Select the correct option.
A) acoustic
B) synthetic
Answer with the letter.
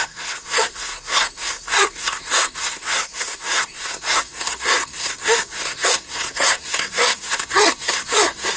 B